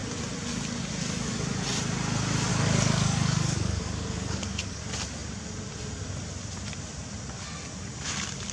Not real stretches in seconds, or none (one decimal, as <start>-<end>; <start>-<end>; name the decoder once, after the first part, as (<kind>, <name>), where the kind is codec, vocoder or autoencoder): 2.5-4.8 (codec, DAC)